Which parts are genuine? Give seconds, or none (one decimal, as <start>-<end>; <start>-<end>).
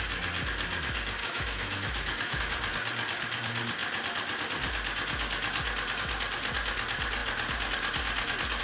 0.0-1.2; 2.4-8.6